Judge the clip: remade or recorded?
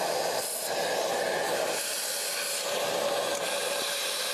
recorded